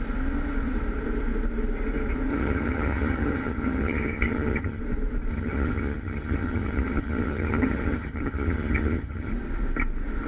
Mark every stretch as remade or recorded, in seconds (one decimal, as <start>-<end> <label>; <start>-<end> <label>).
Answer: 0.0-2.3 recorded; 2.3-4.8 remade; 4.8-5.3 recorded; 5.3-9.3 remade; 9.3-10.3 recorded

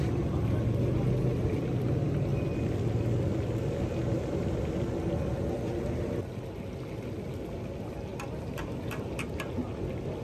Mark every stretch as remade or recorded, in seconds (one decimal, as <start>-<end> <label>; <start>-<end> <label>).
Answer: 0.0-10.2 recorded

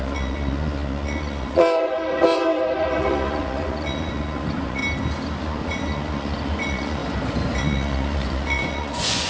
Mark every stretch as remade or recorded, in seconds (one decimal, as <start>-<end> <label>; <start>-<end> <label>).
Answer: 0.0-4.8 remade; 4.8-5.4 recorded; 5.4-7.0 remade; 7.0-7.6 recorded; 7.6-9.3 remade

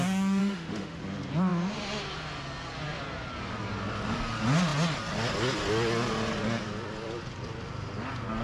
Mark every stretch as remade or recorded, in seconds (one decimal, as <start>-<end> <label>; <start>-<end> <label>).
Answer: 0.0-0.4 recorded; 0.4-1.0 remade; 1.0-8.4 recorded

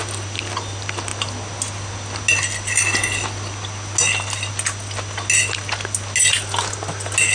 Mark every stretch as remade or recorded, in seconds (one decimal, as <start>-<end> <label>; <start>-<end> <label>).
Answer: 0.0-7.3 recorded

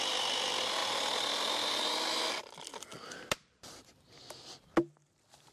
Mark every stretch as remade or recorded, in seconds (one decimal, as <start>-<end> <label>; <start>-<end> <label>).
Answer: 0.0-5.5 recorded

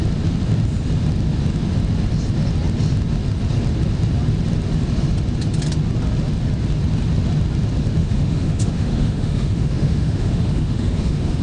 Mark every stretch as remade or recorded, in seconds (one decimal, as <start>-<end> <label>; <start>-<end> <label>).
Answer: 0.0-8.0 recorded; 8.0-11.4 remade

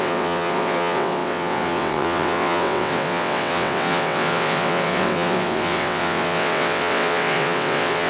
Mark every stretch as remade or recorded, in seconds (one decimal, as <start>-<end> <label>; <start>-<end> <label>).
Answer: 0.0-8.1 remade